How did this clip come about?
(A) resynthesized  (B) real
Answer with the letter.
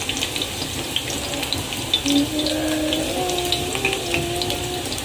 B